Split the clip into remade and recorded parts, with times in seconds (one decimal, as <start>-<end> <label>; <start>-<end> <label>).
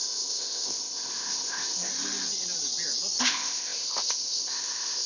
0.0-1.9 remade; 1.9-3.2 recorded; 3.2-5.1 remade